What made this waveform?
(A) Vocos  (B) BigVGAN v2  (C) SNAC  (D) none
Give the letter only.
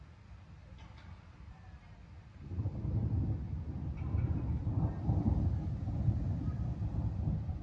D